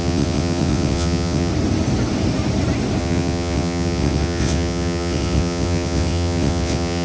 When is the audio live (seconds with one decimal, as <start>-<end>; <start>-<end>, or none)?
1.5-3.0